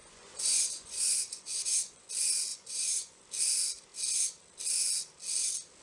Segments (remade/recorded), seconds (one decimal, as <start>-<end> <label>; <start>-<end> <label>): 0.0-2.1 remade; 2.1-2.5 recorded; 2.5-3.2 remade; 3.2-5.8 recorded